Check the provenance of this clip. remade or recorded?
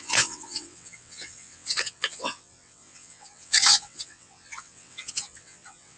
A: remade